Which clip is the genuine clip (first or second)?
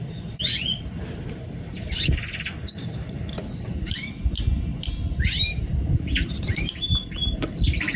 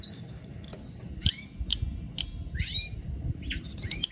second